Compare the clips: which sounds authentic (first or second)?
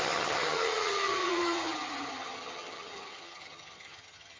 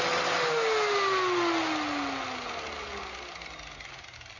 second